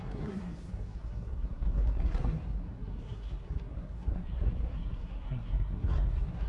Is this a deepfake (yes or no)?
yes